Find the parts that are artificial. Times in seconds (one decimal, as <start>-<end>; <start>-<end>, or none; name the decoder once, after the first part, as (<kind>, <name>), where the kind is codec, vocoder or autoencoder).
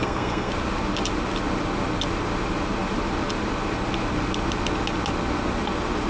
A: 0.0-0.5 (codec, SNAC)